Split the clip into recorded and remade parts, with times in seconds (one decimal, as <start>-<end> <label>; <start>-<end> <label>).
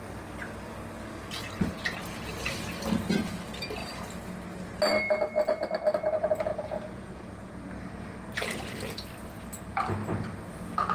0.0-6.5 recorded; 6.5-7.7 remade; 7.7-10.9 recorded